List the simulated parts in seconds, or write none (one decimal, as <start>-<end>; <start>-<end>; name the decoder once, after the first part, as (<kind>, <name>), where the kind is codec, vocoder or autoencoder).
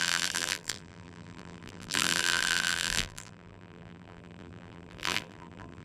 0.0-5.8 (vocoder, BigVGAN v2)